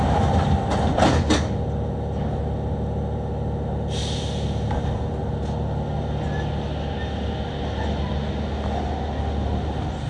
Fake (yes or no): no